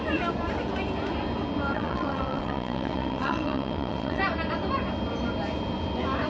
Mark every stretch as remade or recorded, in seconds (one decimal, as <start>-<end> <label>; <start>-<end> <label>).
0.0-1.7 recorded; 1.7-4.2 remade; 4.2-6.3 recorded